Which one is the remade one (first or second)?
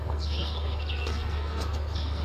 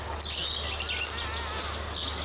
first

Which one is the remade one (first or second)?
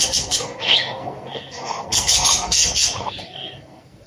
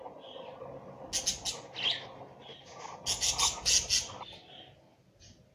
first